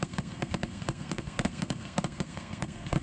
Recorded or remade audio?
remade